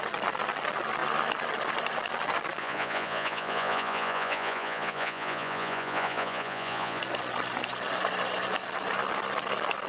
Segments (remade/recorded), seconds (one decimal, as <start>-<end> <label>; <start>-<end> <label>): 0.0-2.6 recorded; 2.6-7.0 remade; 7.0-9.9 recorded